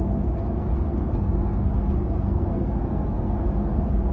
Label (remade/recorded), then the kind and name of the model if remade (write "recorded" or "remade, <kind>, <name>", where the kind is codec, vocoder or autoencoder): remade, codec, SNAC